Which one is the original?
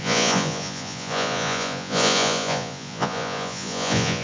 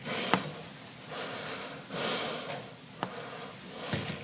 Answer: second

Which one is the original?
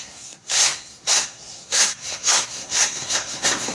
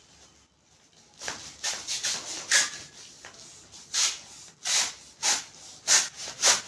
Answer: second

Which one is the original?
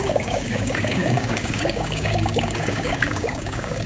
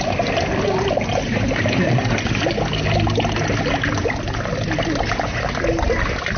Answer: second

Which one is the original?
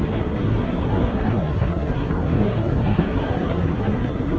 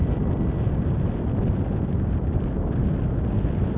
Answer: second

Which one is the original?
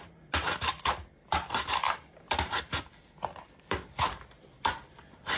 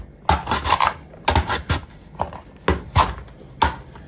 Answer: second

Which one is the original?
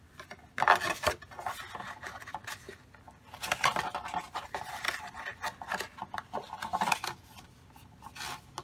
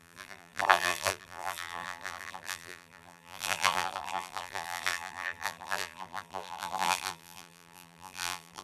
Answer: first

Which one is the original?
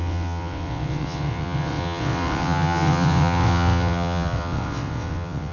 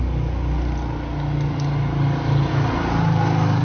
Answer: second